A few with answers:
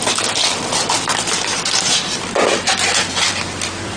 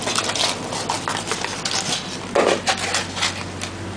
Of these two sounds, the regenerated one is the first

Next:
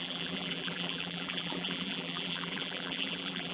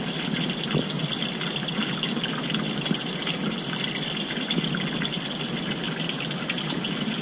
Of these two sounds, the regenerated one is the first